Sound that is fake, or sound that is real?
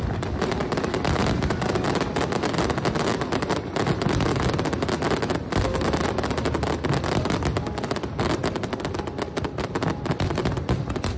real